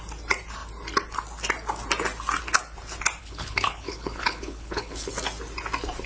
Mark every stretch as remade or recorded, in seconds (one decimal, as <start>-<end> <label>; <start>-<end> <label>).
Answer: 0.0-3.2 recorded; 3.2-5.1 remade; 5.1-6.1 recorded